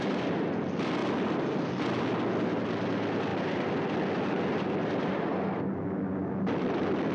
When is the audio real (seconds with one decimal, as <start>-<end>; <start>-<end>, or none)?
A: 0.0-7.1